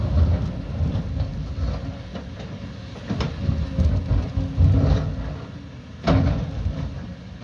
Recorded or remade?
recorded